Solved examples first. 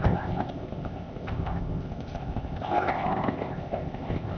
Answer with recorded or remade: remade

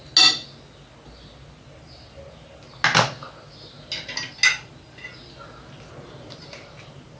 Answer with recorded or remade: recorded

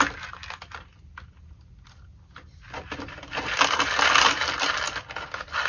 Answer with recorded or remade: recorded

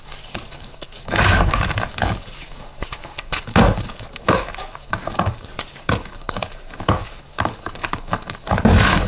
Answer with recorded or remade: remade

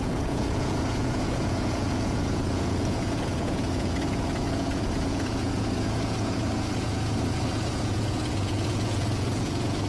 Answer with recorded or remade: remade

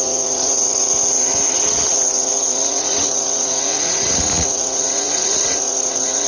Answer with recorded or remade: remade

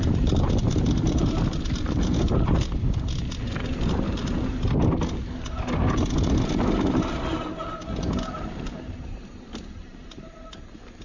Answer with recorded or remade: recorded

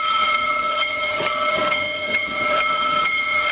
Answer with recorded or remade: remade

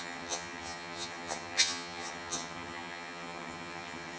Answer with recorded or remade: remade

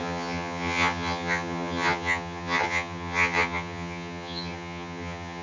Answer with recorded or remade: remade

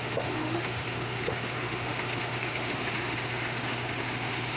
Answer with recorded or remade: remade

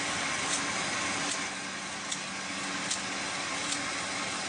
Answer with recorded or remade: recorded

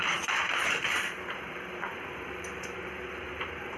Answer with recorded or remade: remade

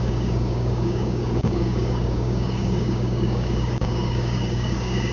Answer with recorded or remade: remade